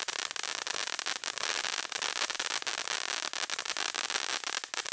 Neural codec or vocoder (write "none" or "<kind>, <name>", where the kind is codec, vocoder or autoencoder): none